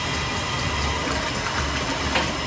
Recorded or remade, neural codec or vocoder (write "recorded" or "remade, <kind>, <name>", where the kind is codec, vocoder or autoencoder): recorded